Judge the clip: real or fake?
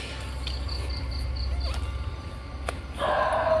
real